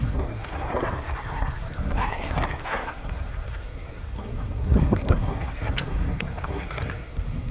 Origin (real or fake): fake